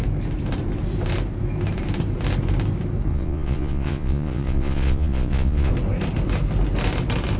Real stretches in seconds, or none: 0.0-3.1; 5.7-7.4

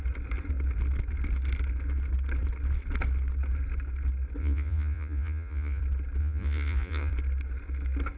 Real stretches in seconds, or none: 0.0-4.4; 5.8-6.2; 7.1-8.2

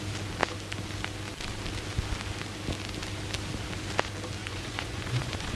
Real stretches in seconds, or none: 0.0-4.4

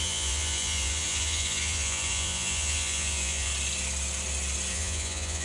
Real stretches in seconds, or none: 3.5-4.7